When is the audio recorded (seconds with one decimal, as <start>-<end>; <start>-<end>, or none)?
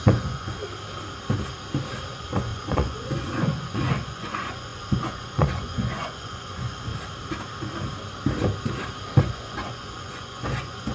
0.6-2.1; 6.9-9.2